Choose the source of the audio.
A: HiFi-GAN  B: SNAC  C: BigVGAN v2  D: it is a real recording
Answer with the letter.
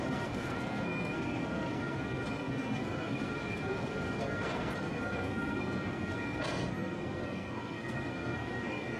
B